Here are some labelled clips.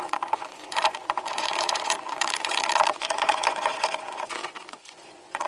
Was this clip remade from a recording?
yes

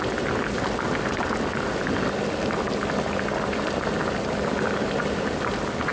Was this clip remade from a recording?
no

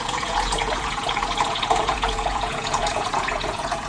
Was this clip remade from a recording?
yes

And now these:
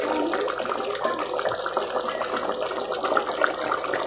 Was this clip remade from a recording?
no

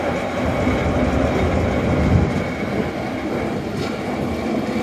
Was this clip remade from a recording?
no